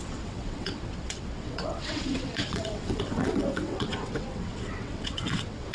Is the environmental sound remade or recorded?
remade